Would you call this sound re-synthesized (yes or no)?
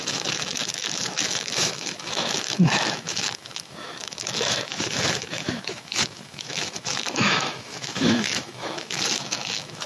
yes